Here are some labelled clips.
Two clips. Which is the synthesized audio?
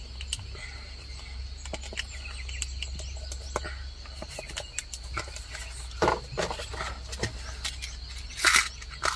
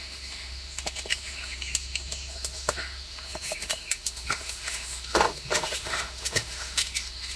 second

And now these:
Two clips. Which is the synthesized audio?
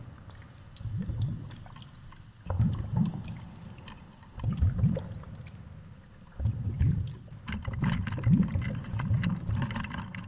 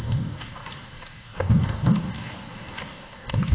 second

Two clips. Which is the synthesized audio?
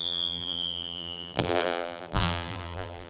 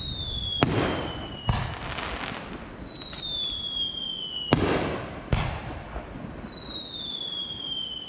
first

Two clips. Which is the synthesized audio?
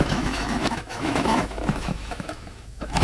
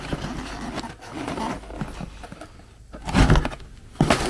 first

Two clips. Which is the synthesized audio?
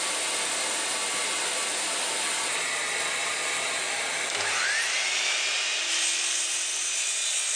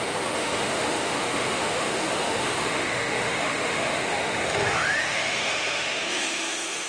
second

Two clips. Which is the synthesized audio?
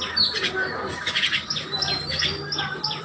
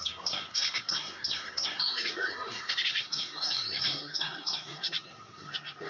second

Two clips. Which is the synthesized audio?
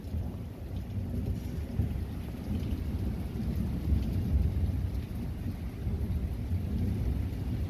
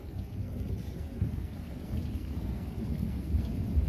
second